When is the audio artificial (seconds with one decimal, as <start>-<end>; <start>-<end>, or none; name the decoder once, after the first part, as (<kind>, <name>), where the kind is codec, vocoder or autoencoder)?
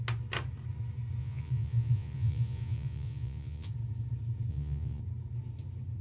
1.2-3.7 (vocoder, Vocos); 4.5-5.0